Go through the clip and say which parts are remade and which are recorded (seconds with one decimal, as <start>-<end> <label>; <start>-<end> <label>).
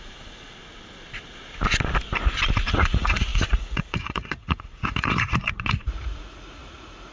0.0-0.6 remade; 0.6-2.7 recorded; 2.7-7.1 remade